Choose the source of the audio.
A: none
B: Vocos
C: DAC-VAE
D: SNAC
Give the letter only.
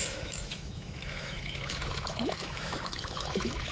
C